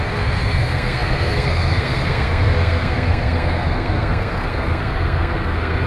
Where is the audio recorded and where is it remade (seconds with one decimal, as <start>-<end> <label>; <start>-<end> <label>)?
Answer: 0.0-5.9 remade